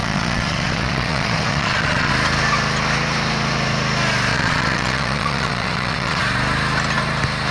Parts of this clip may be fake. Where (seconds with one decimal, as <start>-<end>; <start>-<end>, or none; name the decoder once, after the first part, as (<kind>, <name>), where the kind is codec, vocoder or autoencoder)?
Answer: 0.0-2.1 (vocoder, Vocos); 4.3-6.2